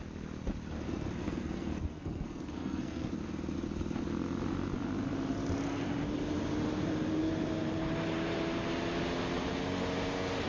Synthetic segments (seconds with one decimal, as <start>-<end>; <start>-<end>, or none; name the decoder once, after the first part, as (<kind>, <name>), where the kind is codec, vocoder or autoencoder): 1.2-3.1 (codec, SNAC)